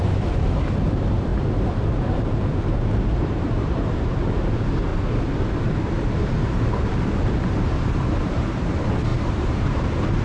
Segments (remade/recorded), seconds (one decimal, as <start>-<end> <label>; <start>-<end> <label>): 0.0-4.9 remade; 4.9-6.4 recorded; 6.4-10.2 remade